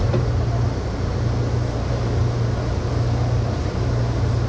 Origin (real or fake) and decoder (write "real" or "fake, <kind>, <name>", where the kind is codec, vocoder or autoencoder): real